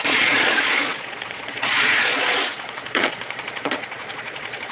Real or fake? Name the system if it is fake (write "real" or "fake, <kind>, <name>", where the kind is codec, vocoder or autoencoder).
fake, vocoder, Vocos